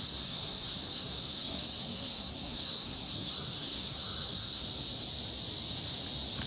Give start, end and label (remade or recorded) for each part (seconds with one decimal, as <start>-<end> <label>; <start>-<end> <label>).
0.0-4.6 remade; 4.6-6.5 recorded